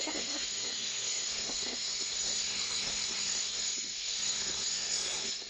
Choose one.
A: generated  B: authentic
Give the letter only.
A